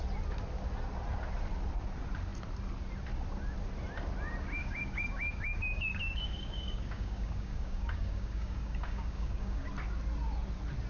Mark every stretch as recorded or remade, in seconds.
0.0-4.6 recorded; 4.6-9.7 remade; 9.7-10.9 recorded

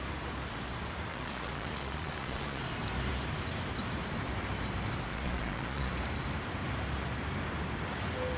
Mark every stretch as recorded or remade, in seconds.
0.0-1.1 recorded; 1.1-2.6 remade; 2.6-5.1 recorded; 5.1-5.9 remade; 5.9-8.4 recorded

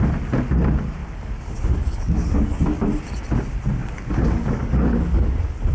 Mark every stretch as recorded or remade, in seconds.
0.0-1.0 recorded; 1.0-2.8 remade; 2.8-3.8 recorded; 3.8-5.7 remade